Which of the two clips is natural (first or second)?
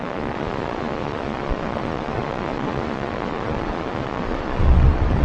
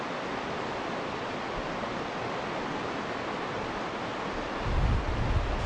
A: second